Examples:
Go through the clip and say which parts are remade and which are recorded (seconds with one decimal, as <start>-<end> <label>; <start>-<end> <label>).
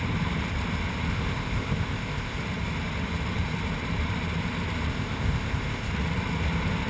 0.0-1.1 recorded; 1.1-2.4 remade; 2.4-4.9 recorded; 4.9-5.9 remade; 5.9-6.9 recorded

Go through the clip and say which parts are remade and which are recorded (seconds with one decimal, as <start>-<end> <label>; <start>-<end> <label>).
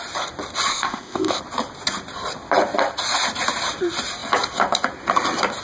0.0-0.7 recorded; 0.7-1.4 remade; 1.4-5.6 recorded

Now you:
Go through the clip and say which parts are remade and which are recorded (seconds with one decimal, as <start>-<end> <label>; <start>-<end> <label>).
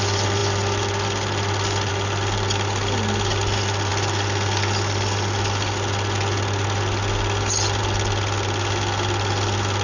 0.0-9.8 recorded